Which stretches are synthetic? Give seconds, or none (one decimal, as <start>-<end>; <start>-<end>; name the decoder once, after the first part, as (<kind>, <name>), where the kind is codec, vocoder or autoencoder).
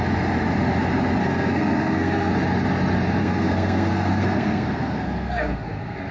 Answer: 1.2-2.3 (codec, SNAC); 3.2-6.1